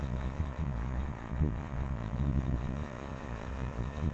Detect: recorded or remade remade